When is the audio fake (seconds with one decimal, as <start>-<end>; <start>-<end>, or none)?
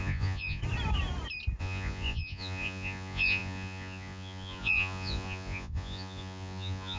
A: 0.0-0.6; 1.6-7.0